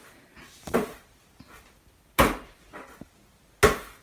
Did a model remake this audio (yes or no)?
no